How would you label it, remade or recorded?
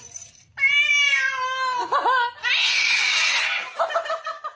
recorded